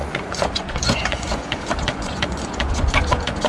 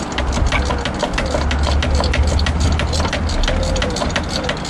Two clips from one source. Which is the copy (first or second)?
first